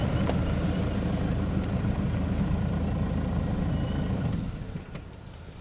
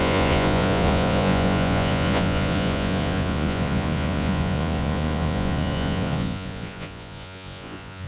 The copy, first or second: second